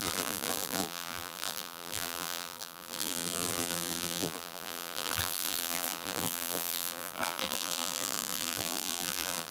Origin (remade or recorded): remade